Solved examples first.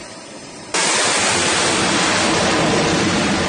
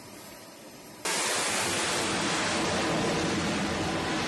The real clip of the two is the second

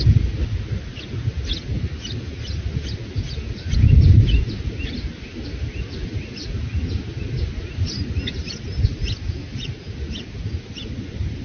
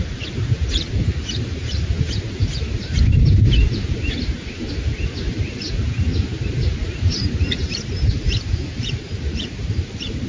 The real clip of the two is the first